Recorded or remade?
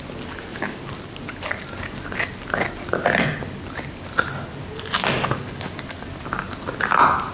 recorded